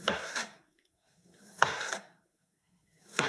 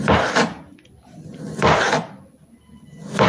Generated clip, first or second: first